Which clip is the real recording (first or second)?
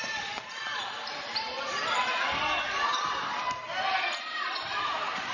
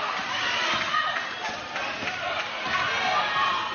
second